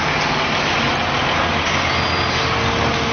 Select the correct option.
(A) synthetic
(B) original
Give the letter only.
B